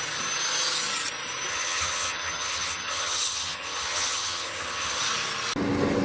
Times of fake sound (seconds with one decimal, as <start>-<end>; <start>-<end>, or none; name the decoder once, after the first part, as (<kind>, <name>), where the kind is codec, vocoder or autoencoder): 1.5-5.0 (vocoder, HiFi-GAN)